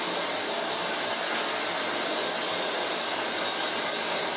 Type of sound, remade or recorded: recorded